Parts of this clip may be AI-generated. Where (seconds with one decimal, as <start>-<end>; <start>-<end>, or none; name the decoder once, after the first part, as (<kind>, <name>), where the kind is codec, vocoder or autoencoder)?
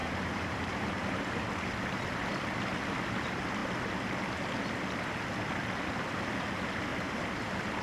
0.0-1.4 (vocoder, BigVGAN v2); 6.9-7.8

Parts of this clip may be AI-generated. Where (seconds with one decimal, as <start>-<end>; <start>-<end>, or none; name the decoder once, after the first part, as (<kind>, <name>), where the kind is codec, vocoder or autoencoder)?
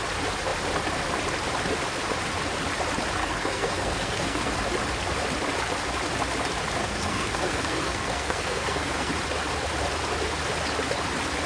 3.2-4.5 (codec, SNAC); 6.8-9.1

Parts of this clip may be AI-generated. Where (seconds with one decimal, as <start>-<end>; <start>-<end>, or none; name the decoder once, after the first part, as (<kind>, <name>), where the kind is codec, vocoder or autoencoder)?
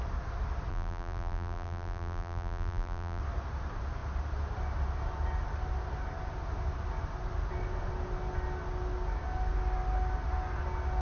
0.7-3.2 (vocoder, BigVGAN v2)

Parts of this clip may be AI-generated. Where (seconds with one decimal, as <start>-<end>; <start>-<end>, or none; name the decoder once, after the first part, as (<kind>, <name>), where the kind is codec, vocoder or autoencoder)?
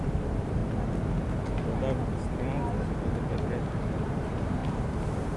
0.0-0.6 (vocoder, BigVGAN v2); 3.7-4.6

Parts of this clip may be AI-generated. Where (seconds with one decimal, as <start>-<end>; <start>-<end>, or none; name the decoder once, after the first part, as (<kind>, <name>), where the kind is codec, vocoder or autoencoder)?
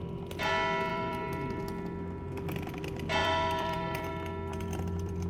0.9-1.6 (vocoder, BigVGAN v2); 3.2-4.1; 4.5-5.3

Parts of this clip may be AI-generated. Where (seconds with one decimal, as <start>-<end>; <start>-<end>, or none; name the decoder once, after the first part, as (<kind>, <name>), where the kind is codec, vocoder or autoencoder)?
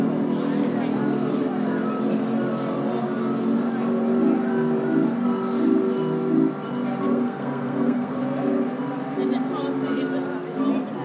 7.1-8.2 (codec, SNAC)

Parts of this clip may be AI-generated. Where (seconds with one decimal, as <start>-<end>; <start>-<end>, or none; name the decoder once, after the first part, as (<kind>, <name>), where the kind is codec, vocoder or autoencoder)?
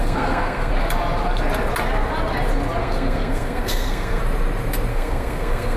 0.0-0.7 (codec, SNAC); 2.8-4.2; 4.9-5.8